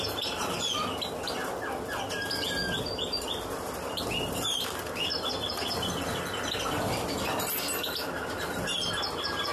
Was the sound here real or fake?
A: fake